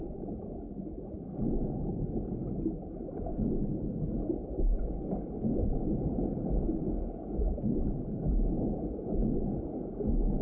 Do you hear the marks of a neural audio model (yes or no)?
no